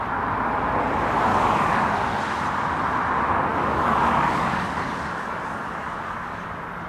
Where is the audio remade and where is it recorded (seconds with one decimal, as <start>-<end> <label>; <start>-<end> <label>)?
0.0-1.3 recorded; 1.3-2.2 remade; 2.2-3.5 recorded; 3.5-6.5 remade; 6.5-6.9 recorded